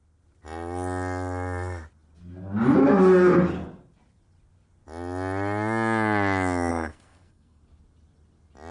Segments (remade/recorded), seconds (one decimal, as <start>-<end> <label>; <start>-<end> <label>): 0.0-6.7 recorded; 6.7-7.6 remade; 7.6-8.7 recorded